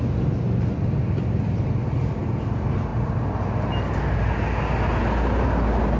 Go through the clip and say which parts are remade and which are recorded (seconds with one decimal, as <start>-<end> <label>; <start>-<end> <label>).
0.0-6.0 recorded